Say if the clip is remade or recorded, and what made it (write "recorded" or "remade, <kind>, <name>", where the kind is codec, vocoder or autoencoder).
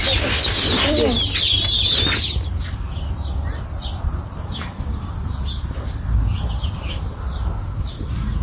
recorded